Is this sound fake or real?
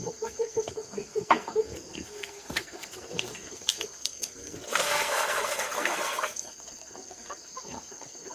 fake